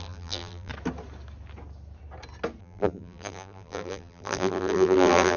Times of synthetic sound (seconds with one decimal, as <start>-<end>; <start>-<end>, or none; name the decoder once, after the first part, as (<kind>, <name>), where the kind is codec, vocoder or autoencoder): 0.0-0.7 (vocoder, BigVGAN v2); 2.6-5.4

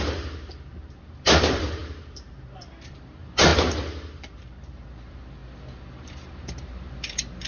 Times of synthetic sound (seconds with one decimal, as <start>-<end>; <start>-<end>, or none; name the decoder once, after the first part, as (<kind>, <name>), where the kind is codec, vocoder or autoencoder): 0.0-3.5 (vocoder, BigVGAN v2); 4.3-5.4; 6.1-7.5

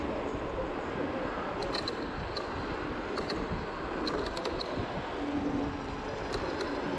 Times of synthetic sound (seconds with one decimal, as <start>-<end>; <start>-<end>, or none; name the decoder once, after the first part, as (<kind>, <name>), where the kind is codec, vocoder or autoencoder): none

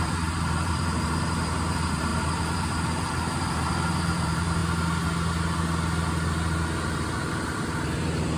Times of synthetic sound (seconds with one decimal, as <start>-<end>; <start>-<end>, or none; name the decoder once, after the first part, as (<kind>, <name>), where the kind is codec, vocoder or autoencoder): 0.0-4.6 (vocoder, BigVGAN v2); 7.3-8.4

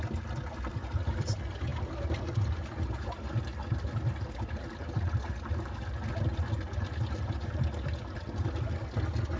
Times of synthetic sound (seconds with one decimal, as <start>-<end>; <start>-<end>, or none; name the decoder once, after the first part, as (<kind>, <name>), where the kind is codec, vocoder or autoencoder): none

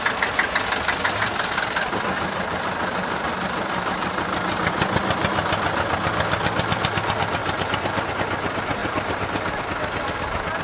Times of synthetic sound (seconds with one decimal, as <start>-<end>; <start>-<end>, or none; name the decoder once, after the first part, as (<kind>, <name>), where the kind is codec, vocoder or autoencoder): 3.3-4.2 (vocoder, BigVGAN v2); 7.4-8.1; 8.8-9.6